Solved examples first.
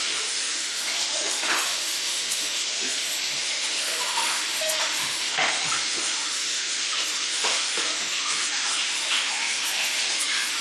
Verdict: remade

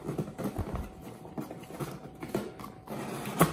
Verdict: recorded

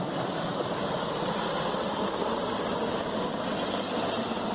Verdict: recorded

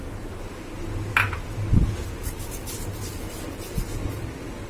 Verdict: recorded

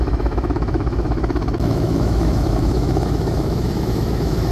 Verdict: remade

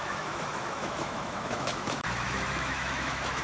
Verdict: remade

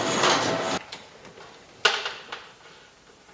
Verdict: recorded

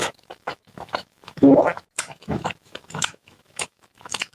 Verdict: remade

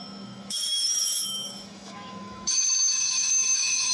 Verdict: remade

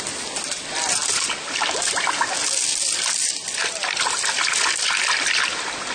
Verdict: recorded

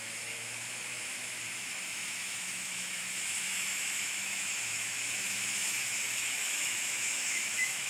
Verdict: remade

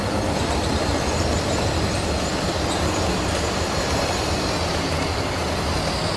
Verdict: recorded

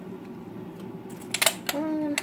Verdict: recorded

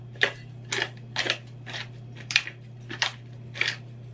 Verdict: recorded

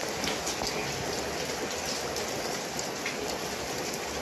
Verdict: recorded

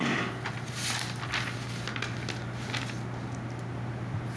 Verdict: recorded